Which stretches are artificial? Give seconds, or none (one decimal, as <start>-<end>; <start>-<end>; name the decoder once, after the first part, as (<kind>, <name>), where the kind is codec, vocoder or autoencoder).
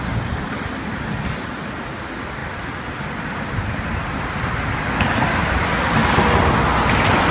none